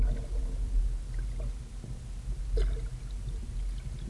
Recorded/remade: recorded